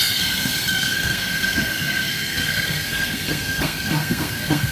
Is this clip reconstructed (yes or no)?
yes